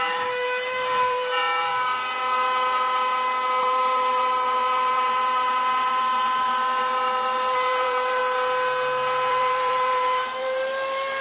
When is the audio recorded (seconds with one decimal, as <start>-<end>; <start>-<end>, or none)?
1.7-3.6; 8.2-9.3

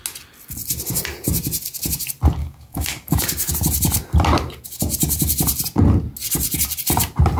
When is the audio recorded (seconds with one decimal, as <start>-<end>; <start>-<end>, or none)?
0.0-2.4; 3.5-7.4